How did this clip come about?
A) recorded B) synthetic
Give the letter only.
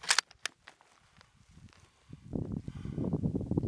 A